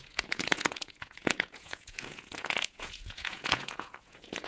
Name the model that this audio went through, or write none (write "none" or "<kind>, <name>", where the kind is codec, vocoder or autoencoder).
vocoder, Vocos